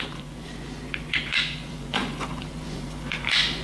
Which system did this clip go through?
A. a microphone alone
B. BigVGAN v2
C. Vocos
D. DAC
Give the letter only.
C